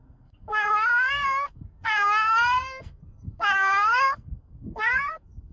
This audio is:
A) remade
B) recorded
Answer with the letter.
A